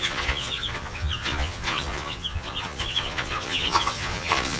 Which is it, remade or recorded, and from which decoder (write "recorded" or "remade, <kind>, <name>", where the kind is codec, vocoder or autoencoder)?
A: remade, vocoder, Vocos